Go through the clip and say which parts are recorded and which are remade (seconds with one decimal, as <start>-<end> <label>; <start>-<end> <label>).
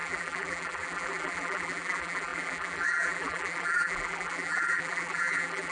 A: 0.0-5.7 remade